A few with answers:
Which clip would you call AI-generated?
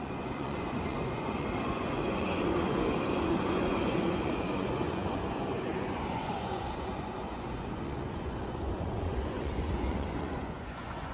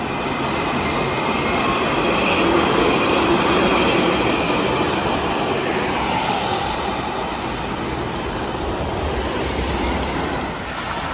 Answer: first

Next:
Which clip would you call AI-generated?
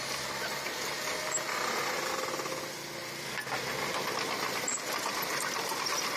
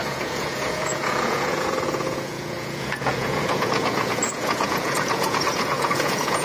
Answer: second